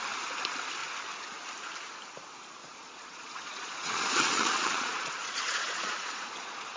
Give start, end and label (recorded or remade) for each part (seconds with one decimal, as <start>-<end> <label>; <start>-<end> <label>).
0.0-2.6 recorded; 2.6-6.8 remade